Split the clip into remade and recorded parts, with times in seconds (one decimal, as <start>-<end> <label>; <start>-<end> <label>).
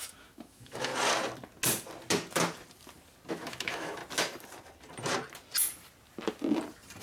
0.0-0.9 remade; 0.9-3.3 recorded; 3.3-4.0 remade; 4.0-7.0 recorded